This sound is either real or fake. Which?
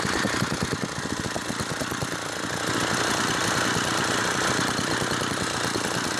real